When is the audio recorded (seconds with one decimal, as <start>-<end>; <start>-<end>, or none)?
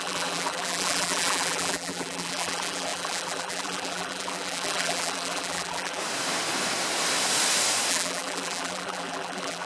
6.0-7.9